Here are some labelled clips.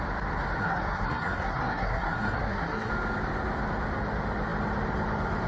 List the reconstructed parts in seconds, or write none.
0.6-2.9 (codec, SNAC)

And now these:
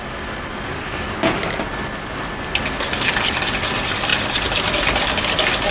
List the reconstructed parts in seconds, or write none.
none

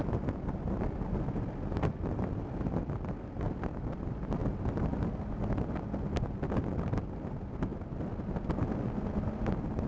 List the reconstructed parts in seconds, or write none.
none

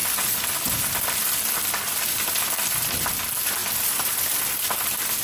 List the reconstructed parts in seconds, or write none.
0.0-3.1 (vocoder, BigVGAN v2); 3.6-4.4